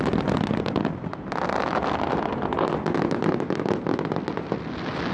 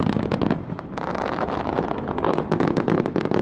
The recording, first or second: first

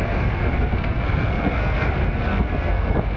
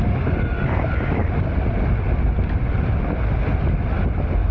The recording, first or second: second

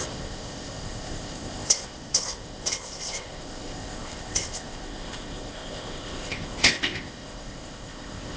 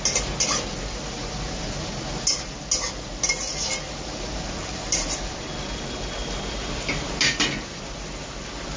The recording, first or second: second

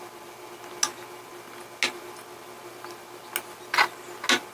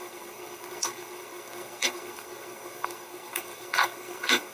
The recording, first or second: first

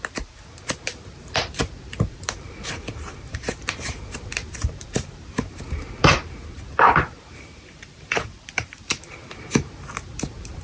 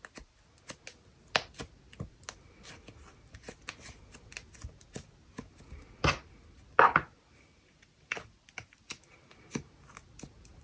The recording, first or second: second